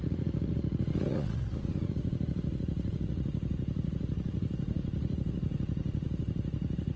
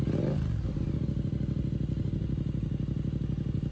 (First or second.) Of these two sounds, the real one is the second